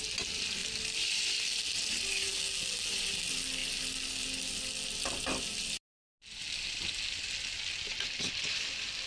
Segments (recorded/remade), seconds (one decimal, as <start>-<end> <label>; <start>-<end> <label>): 0.0-0.6 recorded; 0.6-1.6 remade; 1.6-9.1 recorded